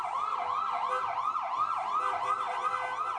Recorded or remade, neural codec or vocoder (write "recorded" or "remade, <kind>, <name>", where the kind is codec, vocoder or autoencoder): recorded